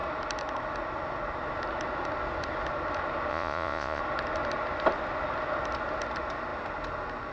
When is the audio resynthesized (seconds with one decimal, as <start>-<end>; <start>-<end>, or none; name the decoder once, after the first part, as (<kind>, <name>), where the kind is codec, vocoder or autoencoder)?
3.3-4.0 (vocoder, Vocos)